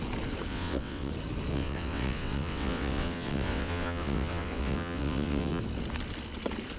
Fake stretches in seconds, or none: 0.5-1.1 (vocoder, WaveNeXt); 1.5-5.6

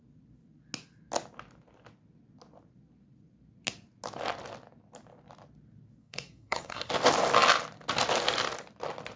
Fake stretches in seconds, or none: 6.0-6.9 (codec, SNAC)

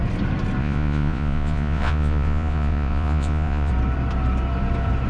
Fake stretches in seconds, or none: 0.6-3.7 (vocoder, Vocos)

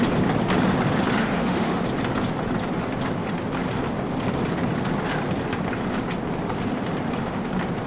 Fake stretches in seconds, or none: 1.2-1.8 (autoencoder, DAC-VAE)

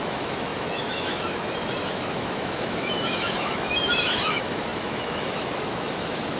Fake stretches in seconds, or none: 0.0-6.4 (autoencoder, DAC-VAE)

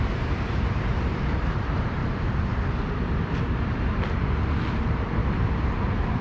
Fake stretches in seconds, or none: 0.0-2.0 (vocoder, BigVGAN v2); 4.7-6.2

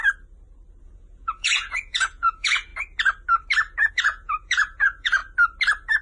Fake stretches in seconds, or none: 0.8-2.7 (vocoder, Vocos); 3.9-5.2

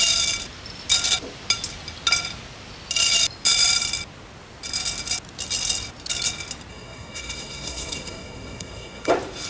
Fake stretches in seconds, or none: 6.7-9.1 (codec, SNAC)